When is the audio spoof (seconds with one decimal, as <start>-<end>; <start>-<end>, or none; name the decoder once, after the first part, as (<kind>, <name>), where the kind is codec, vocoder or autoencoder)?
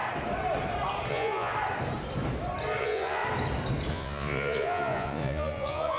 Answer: 1.1-1.5 (vocoder, Vocos); 2.8-3.2; 3.9-6.0